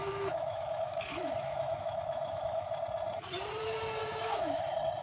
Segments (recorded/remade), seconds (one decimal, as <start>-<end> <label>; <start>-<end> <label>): 0.0-2.8 remade; 2.8-4.0 recorded; 4.0-4.6 remade; 4.6-5.0 recorded